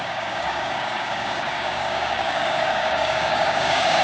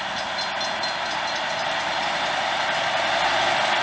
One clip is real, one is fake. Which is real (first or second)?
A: second